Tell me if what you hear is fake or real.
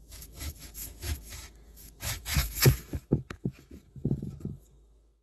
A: fake